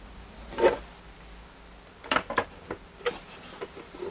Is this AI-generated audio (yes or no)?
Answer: no